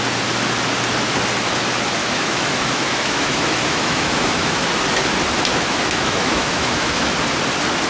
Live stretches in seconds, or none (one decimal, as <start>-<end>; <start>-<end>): 0.0-2.0; 4.7-5.5; 7.1-7.9